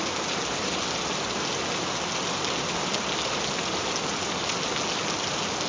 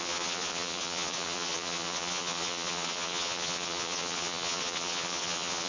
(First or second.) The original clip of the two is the first